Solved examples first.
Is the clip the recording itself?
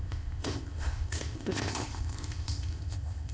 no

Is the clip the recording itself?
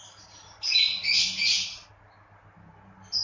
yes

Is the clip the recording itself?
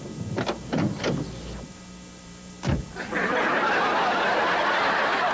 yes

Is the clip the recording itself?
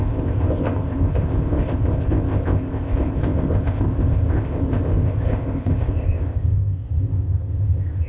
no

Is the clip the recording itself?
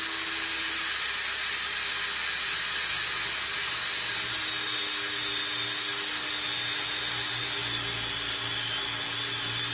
yes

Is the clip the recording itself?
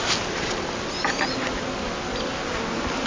yes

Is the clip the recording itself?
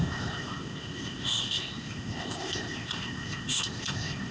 no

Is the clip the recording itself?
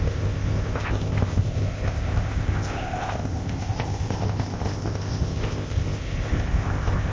no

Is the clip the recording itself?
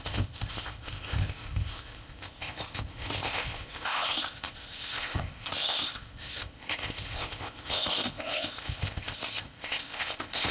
no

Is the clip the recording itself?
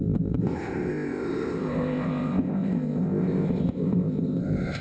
no